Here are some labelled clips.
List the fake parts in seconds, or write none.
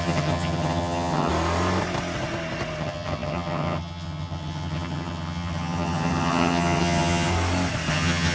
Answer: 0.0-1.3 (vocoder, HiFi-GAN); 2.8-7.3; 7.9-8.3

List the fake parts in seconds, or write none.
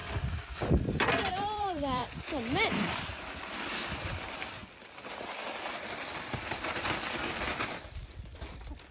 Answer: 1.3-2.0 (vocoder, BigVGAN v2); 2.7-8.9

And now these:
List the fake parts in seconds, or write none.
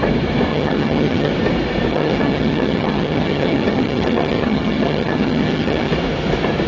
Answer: 0.5-1.3 (vocoder, HiFi-GAN); 1.9-5.9